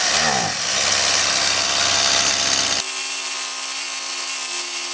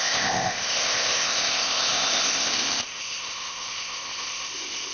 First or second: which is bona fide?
first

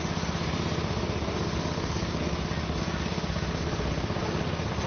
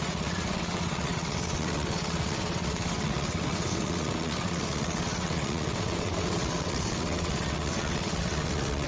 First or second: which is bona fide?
first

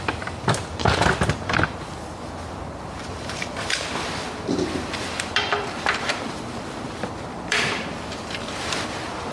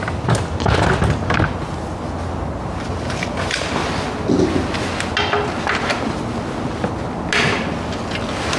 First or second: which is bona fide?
second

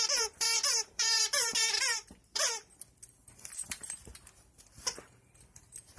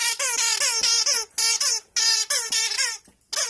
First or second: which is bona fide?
second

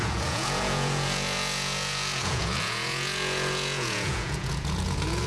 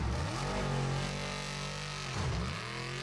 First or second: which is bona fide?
second